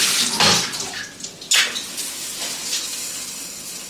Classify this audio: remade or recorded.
recorded